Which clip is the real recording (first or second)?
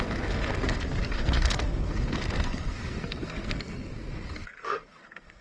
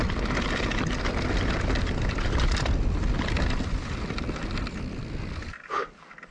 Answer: second